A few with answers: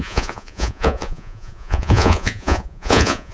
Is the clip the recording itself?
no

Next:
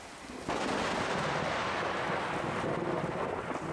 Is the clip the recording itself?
yes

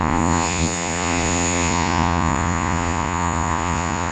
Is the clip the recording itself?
no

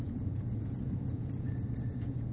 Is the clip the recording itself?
no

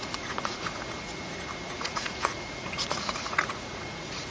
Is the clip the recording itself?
no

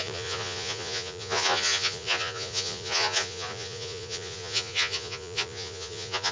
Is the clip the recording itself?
no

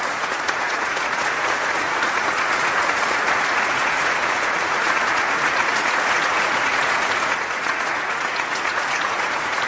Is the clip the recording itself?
no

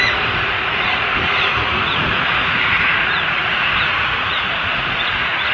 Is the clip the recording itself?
no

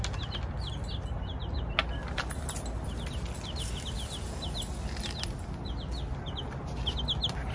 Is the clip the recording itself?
yes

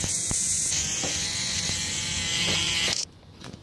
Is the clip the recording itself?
no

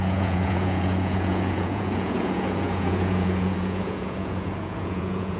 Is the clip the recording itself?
no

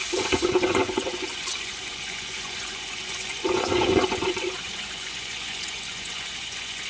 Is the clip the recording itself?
no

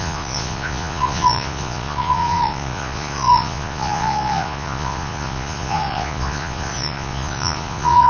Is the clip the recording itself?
no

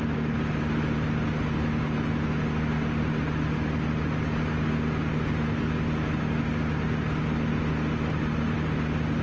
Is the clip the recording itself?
yes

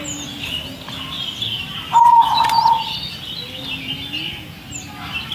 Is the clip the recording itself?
yes